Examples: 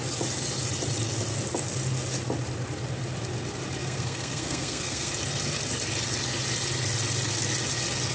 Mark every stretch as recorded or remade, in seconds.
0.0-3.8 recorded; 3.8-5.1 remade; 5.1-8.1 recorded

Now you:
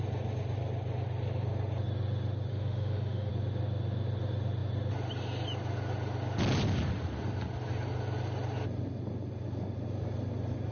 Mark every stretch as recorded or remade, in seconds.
0.0-2.5 recorded; 2.5-3.3 remade; 3.3-10.7 recorded

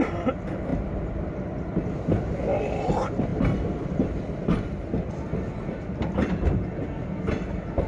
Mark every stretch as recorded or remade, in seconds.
0.0-7.9 recorded

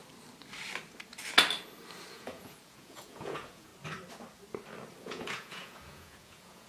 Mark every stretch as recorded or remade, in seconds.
0.0-2.1 recorded; 2.1-3.7 remade; 3.7-5.0 recorded; 5.0-6.7 remade

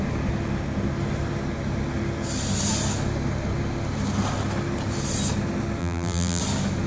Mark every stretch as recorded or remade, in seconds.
0.0-5.8 recorded; 5.8-6.4 remade; 6.4-6.9 recorded

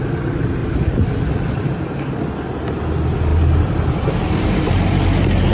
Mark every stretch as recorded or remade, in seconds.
0.0-0.6 recorded; 0.6-1.8 remade; 1.8-3.3 recorded; 3.3-4.7 remade; 4.7-5.5 recorded

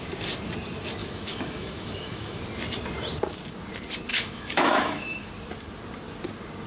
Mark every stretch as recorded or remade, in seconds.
0.0-1.0 recorded; 1.0-2.4 remade; 2.4-4.1 recorded; 4.1-5.3 remade; 5.3-6.7 recorded